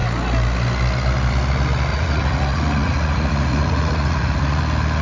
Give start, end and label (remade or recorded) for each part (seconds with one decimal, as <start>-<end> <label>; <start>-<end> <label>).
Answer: 0.0-1.9 recorded; 1.9-4.6 remade; 4.6-5.0 recorded